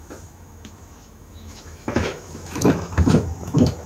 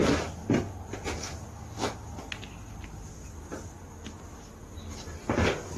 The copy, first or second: first